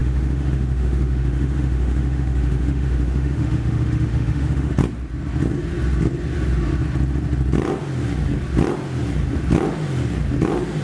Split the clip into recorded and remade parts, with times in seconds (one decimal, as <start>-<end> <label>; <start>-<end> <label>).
0.0-4.7 remade; 4.7-10.8 recorded